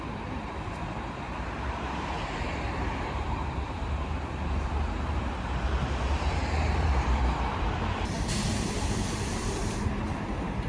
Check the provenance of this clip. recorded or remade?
remade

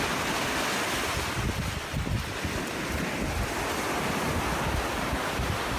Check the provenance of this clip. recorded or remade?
recorded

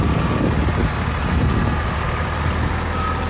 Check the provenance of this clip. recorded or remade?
recorded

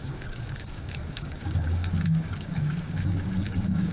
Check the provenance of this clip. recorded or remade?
remade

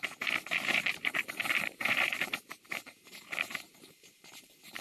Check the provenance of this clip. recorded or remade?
remade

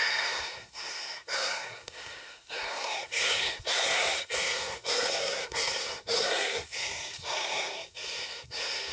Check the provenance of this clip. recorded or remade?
remade